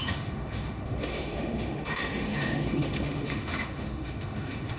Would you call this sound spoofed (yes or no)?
yes